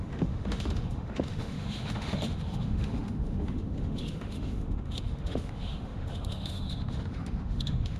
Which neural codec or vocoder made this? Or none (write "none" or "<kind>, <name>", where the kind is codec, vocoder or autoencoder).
autoencoder, DAC-VAE